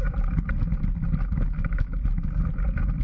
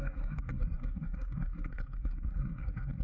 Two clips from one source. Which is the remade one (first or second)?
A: second